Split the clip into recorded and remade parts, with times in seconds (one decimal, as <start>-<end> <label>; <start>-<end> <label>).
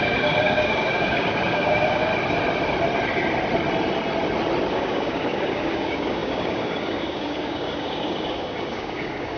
0.0-2.1 remade; 2.1-4.7 recorded; 4.7-9.4 remade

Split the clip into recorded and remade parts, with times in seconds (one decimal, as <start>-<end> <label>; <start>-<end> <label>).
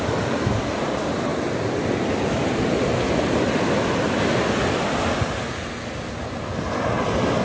0.0-7.4 recorded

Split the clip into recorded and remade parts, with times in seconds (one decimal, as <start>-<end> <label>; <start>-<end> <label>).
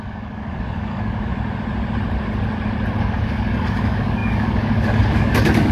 0.0-1.3 remade; 1.3-3.0 recorded; 3.0-5.7 remade